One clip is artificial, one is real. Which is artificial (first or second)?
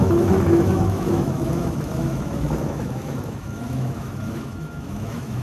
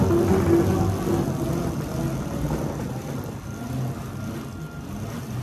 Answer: first